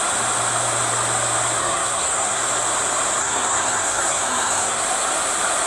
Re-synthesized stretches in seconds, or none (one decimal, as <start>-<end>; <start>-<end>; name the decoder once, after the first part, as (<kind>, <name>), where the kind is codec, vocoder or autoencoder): 1.6-2.4 (codec, SNAC); 3.2-4.8